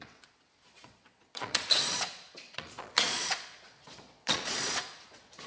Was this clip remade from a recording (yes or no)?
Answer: yes